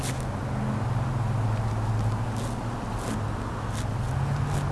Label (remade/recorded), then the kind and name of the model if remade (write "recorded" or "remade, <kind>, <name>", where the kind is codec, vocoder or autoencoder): recorded